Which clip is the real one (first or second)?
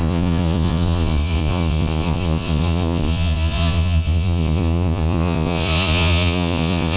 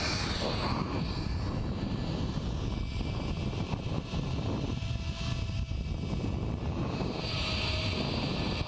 second